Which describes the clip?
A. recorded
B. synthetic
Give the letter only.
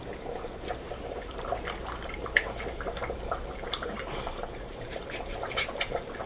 B